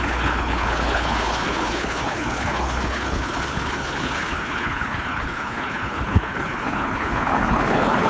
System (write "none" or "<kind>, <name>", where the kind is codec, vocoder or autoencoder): codec, HILCodec